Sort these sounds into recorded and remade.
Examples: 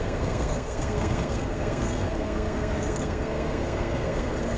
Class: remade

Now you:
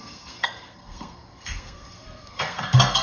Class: remade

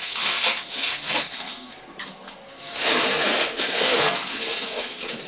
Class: remade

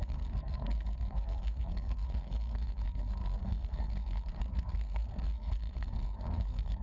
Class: remade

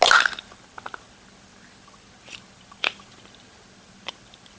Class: recorded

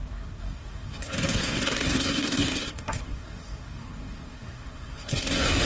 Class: remade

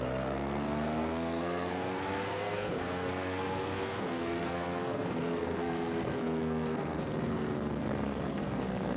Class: remade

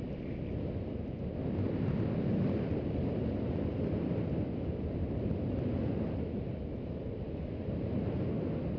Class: recorded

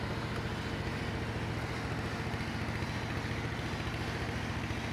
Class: recorded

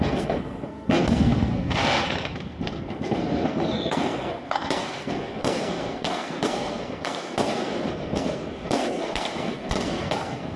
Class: remade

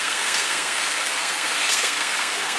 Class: remade